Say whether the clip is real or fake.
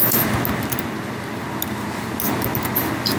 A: real